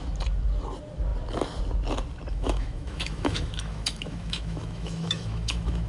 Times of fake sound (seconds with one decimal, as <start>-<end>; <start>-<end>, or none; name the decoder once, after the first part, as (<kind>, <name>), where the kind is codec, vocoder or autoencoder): 2.3-5.9 (autoencoder, DAC-VAE)